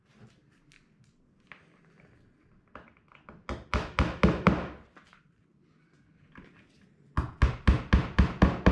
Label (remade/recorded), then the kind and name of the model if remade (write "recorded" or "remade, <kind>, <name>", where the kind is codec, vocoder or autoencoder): recorded